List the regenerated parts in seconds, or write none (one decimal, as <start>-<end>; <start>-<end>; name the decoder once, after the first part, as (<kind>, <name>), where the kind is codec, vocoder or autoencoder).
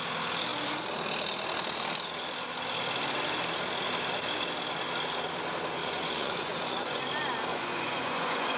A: 5.8-7.0 (vocoder, Vocos); 7.5-8.6